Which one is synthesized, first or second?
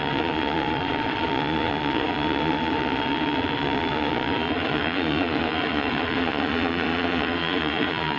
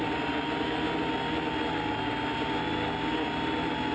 first